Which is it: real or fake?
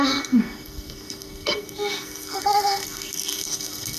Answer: fake